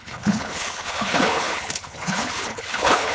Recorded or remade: remade